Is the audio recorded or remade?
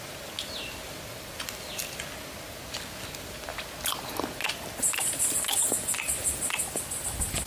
recorded